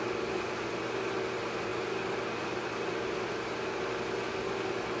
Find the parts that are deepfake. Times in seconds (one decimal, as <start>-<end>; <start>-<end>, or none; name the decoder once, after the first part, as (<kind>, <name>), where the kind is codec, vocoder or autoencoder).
none